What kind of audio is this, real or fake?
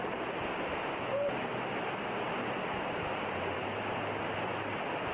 real